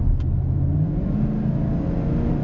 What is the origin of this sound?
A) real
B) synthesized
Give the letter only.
A